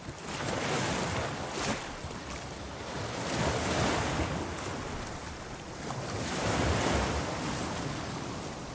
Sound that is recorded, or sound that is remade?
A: recorded